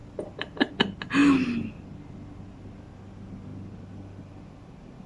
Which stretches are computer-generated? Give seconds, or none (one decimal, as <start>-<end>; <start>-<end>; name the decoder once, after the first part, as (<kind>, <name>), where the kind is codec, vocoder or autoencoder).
0.0-0.7 (vocoder, BigVGAN v2); 1.2-2.1; 3.5-5.1